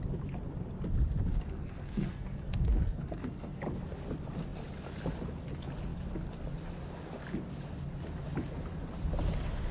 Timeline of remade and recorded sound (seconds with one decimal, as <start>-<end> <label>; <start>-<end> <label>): 0.0-1.3 recorded; 1.3-3.6 remade; 3.6-9.7 recorded